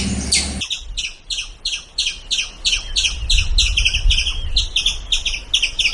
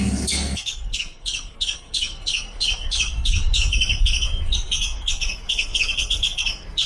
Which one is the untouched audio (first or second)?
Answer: first